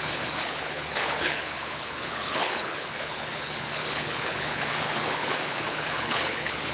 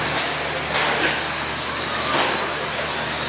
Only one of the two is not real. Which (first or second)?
first